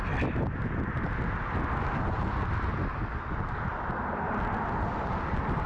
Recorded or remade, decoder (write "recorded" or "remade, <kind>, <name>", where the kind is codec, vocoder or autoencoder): recorded